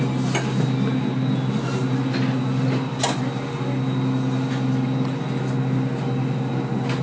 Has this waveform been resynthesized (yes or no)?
no